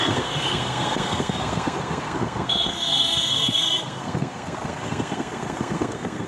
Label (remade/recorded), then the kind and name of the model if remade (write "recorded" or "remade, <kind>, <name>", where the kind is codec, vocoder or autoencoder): remade, codec, SNAC